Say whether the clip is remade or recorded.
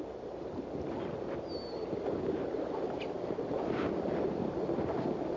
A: recorded